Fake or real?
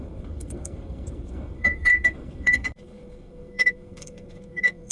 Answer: fake